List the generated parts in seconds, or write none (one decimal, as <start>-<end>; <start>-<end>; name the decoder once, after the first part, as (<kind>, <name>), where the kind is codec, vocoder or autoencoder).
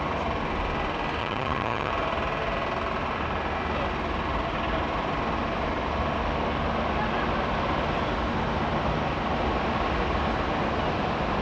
1.2-1.9 (vocoder, HiFi-GAN)